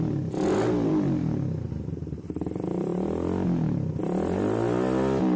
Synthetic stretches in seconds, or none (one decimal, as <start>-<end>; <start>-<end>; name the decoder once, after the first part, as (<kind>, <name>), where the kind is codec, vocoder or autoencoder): 0.9-2.4 (vocoder, BigVGAN v2)